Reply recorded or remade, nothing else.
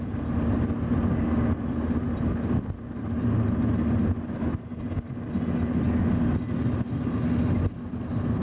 recorded